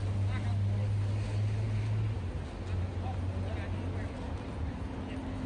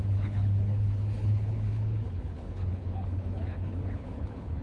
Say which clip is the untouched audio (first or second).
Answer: first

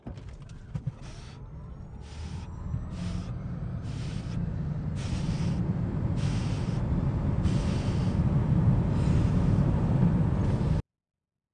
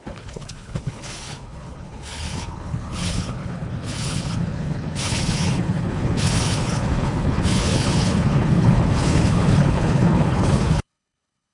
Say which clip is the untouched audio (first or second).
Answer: first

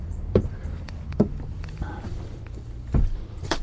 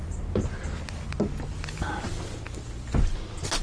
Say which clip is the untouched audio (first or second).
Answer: second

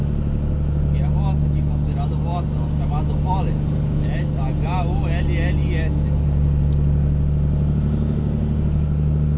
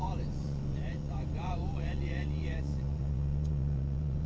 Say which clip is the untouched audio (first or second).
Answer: first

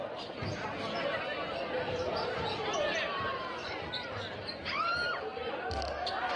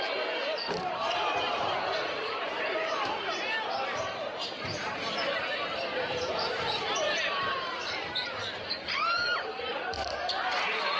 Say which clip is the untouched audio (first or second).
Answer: first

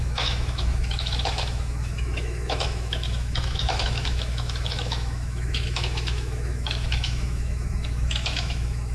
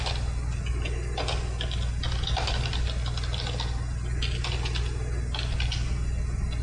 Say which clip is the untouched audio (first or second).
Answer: second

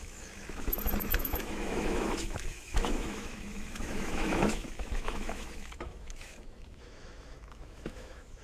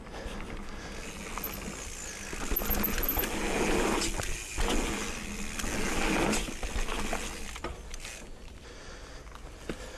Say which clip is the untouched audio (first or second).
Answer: second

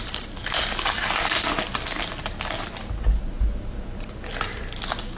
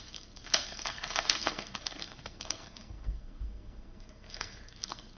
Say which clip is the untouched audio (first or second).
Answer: first